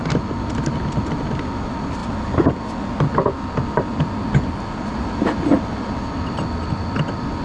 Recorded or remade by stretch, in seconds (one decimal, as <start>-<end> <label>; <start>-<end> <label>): 0.0-7.4 recorded